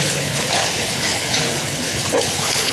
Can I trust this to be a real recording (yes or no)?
no